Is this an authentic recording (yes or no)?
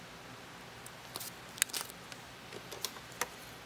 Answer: yes